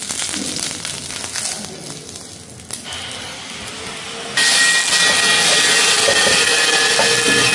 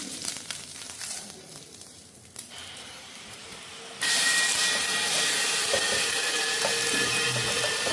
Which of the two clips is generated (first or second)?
second